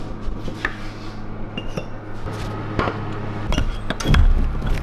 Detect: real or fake real